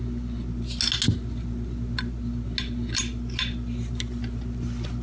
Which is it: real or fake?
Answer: real